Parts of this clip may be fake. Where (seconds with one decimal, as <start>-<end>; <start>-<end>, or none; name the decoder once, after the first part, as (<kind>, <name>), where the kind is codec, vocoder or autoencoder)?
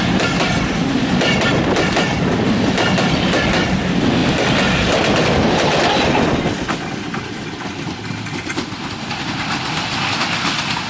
none